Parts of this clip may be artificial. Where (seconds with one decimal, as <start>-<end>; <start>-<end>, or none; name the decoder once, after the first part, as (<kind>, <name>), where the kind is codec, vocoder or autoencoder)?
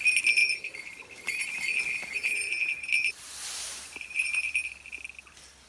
0.4-1.6 (vocoder, BigVGAN v2); 2.0-4.5